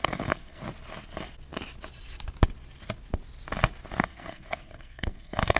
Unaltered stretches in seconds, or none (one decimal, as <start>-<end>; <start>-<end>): 0.6-3.9